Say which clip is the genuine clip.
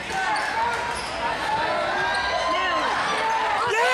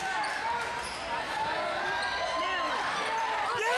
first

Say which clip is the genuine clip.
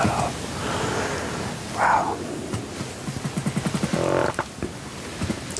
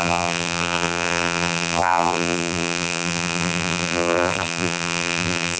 first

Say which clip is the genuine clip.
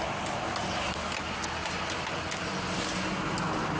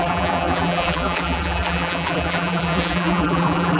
first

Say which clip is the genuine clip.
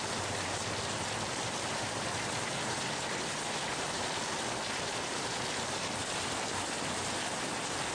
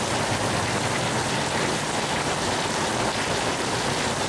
second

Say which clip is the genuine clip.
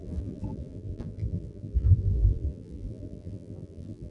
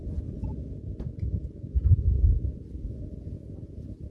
second